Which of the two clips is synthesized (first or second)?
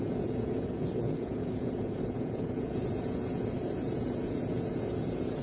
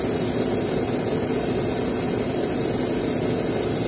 first